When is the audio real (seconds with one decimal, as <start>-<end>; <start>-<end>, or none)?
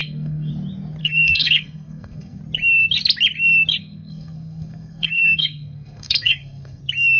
0.5-1.0; 2.4-3.8; 6.8-7.2